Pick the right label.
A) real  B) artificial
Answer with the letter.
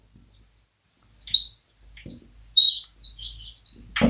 A